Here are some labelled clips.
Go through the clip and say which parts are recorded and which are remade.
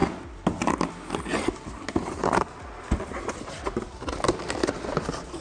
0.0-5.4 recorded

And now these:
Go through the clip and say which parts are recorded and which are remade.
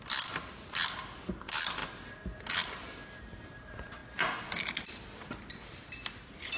0.0-6.6 recorded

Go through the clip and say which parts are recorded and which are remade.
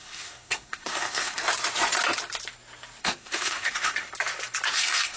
0.0-1.4 remade; 1.4-3.0 recorded; 3.0-4.1 remade; 4.1-4.7 recorded; 4.7-5.2 remade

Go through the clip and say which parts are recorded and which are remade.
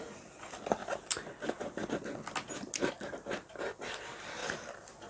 0.0-5.1 recorded